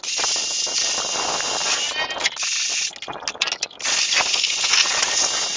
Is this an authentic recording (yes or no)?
yes